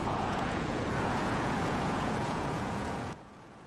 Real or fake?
fake